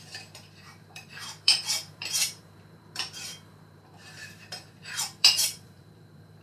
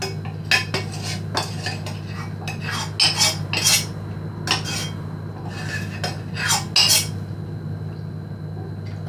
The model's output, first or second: first